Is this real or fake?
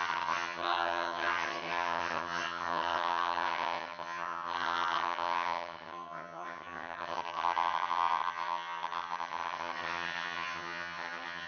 fake